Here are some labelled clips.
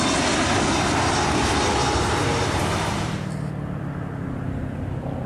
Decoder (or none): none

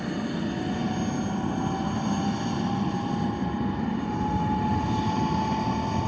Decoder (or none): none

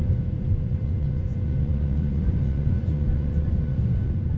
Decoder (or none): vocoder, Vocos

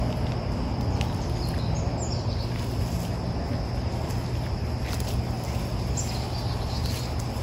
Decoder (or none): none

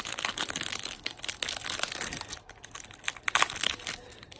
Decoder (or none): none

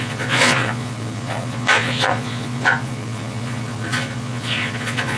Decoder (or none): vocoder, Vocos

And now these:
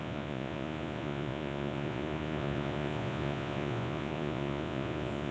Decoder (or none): vocoder, Vocos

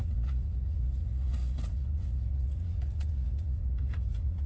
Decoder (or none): vocoder, Vocos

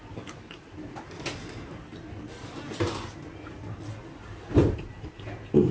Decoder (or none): none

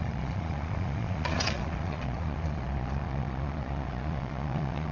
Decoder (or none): vocoder, Vocos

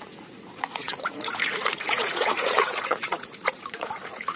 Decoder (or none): vocoder, Vocos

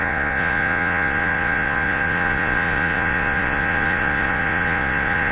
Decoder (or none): vocoder, Vocos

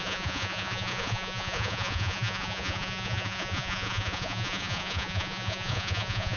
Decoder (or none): vocoder, Vocos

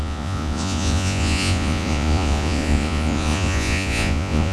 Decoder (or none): vocoder, Vocos